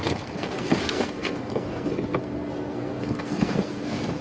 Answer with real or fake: fake